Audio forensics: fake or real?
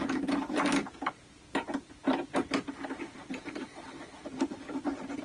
real